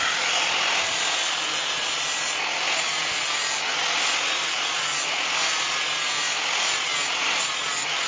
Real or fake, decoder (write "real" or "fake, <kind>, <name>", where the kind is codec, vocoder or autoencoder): real